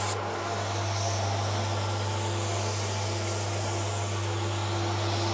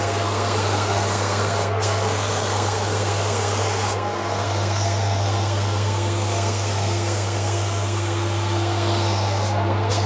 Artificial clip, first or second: second